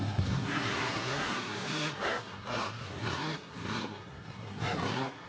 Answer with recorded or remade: remade